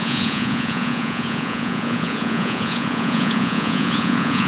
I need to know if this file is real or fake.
fake